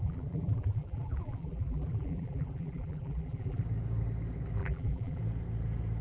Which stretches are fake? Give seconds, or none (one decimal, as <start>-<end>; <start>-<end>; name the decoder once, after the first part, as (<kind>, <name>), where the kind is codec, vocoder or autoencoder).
0.0-3.6 (vocoder, BigVGAN v2); 4.6-5.2